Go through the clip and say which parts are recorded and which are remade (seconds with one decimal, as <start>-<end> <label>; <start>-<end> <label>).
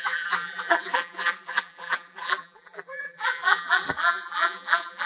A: 0.0-5.1 remade